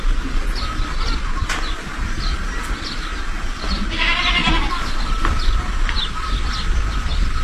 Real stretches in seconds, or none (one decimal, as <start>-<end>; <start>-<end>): 0.0-4.4; 5.5-7.4